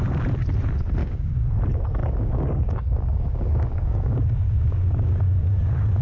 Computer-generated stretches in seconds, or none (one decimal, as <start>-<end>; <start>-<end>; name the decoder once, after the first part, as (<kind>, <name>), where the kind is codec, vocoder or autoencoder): 1.0-1.5 (codec, DAC); 2.0-5.6

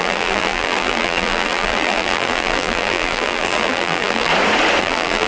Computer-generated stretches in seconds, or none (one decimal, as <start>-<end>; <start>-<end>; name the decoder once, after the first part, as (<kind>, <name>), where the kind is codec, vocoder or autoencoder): 0.0-4.3 (vocoder, BigVGAN v2); 4.8-5.3

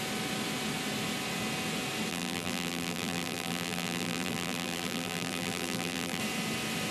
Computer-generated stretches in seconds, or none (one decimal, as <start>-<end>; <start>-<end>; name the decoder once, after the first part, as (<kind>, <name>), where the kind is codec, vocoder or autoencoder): 2.1-6.2 (vocoder, BigVGAN v2)

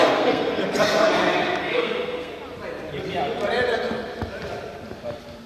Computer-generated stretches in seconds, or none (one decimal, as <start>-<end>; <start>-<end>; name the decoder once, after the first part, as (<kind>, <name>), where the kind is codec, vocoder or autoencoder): 0.0-0.6 (codec, SNAC); 1.6-2.3